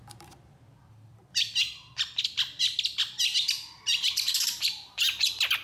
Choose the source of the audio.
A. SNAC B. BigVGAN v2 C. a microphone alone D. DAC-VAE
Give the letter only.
B